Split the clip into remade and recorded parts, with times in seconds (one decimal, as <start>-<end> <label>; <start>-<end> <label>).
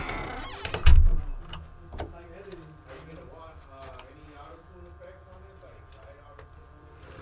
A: 0.0-7.2 recorded